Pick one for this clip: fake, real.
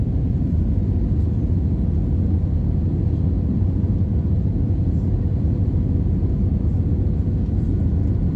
real